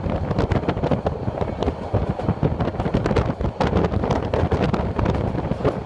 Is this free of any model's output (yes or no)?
yes